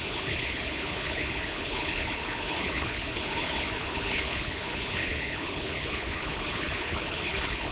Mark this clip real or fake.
fake